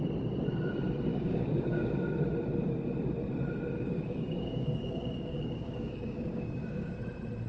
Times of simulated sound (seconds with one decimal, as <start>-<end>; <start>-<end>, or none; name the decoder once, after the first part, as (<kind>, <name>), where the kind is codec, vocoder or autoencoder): 1.1-1.9 (codec, DAC); 3.7-7.0